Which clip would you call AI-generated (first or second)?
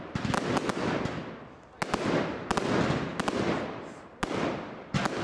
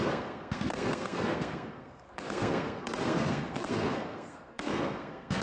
second